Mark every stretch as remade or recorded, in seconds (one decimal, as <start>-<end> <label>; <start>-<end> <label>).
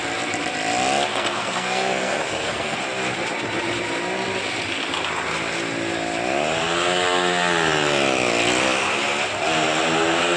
0.0-1.1 recorded; 1.1-2.8 remade; 2.8-10.4 recorded